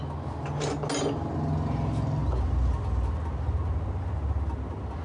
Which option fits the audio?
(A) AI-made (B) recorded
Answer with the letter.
B